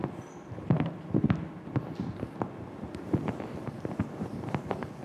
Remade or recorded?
recorded